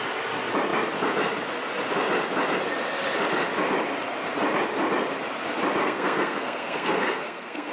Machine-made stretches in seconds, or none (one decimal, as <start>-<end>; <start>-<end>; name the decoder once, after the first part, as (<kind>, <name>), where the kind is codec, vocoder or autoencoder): 5.8-7.7 (codec, SNAC)